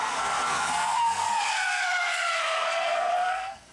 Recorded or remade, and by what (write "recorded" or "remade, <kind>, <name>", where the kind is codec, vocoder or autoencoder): remade, codec, SNAC